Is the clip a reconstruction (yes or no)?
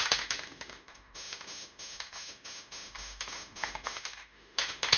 yes